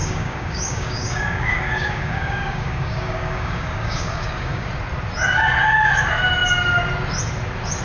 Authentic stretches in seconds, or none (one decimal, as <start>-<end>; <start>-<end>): 4.7-7.8